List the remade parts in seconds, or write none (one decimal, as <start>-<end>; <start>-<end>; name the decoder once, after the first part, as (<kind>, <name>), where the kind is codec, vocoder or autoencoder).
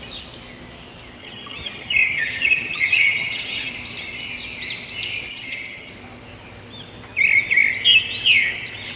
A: 1.2-3.7 (vocoder, HiFi-GAN); 5.3-5.9